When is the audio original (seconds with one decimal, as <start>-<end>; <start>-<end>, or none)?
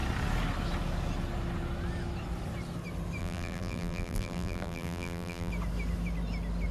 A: 0.0-3.2; 5.5-6.7